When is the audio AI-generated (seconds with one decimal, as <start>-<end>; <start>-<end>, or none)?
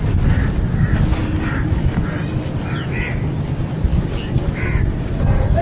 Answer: 1.2-1.8